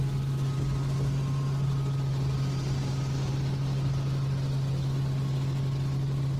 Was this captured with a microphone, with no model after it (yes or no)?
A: yes